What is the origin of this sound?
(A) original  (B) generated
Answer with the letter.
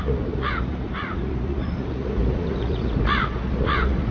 B